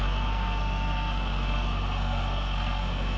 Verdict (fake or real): fake